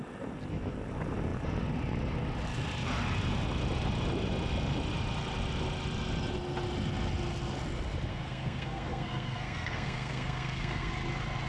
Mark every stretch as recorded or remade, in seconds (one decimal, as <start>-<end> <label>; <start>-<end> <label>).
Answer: 0.0-8.1 recorded; 8.1-10.9 remade; 10.9-11.5 recorded